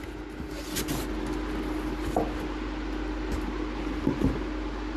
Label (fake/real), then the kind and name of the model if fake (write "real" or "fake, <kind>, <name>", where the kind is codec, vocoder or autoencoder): real